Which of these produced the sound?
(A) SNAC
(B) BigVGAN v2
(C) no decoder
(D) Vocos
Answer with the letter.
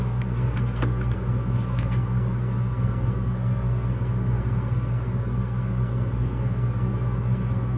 A